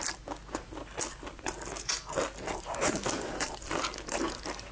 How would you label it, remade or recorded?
recorded